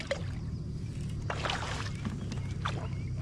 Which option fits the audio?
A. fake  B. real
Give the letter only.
B